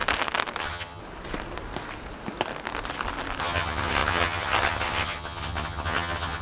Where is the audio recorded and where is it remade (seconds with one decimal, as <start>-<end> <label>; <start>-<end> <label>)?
0.0-0.6 recorded; 0.6-1.0 remade; 1.0-3.4 recorded; 3.4-6.4 remade